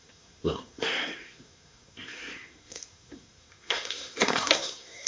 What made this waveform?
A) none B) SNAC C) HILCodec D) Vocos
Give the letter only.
B